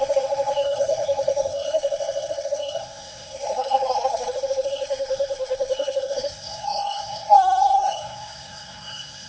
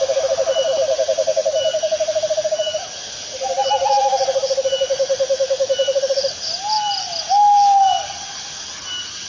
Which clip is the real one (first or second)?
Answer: second